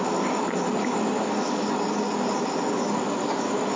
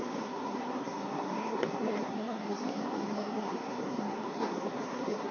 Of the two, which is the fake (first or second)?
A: second